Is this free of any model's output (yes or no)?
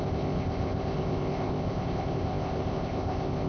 no